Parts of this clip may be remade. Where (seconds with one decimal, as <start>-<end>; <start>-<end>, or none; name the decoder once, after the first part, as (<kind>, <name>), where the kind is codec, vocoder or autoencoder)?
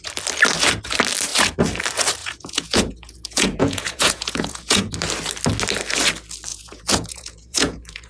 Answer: 2.2-4.9 (vocoder, Vocos); 6.5-8.1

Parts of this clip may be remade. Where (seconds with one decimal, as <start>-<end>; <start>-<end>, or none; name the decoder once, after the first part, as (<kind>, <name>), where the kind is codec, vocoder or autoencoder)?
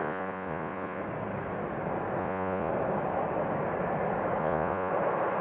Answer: 0.0-1.0 (vocoder, Vocos); 2.2-2.7; 4.4-4.9